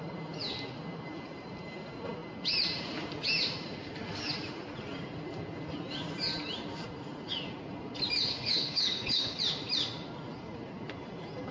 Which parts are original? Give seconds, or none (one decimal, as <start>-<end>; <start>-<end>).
0.0-8.3; 9.4-11.5